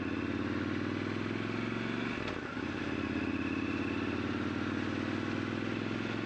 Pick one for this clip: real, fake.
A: real